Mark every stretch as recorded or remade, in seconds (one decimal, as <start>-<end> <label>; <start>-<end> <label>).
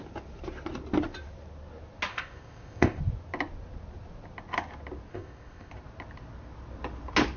0.0-2.1 recorded; 2.1-3.0 remade; 3.0-5.1 recorded; 5.1-5.7 remade; 5.7-7.4 recorded